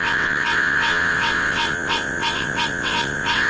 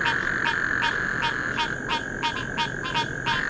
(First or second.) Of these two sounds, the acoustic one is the second